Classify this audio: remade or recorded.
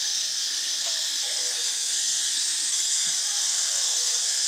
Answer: remade